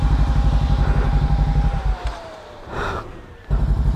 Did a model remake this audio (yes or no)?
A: yes